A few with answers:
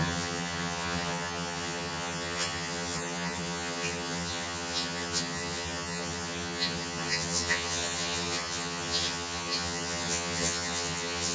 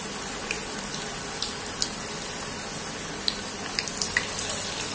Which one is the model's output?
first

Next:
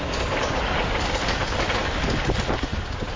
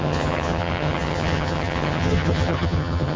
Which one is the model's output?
second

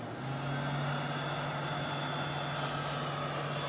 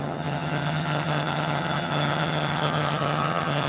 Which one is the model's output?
second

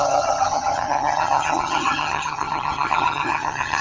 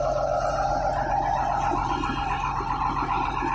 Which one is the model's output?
first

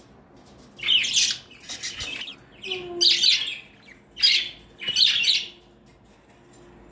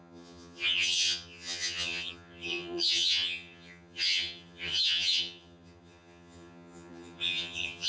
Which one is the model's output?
second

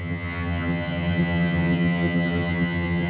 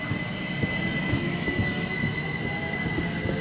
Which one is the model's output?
first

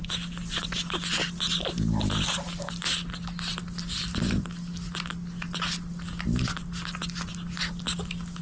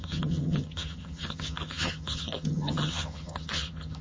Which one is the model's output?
second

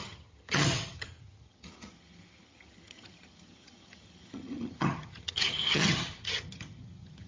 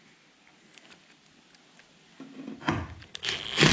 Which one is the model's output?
first